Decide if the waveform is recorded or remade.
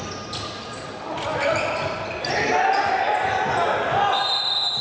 recorded